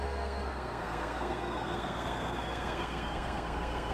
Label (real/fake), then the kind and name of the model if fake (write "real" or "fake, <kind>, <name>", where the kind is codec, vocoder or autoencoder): fake, codec, SNAC